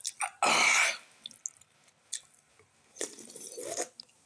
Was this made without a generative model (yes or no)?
yes